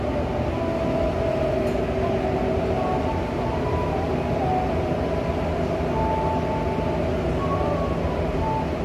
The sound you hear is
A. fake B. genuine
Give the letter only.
B